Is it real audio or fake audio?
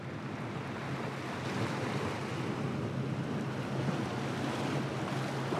real